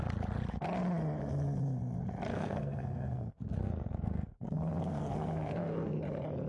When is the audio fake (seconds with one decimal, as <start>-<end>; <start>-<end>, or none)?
2.3-6.0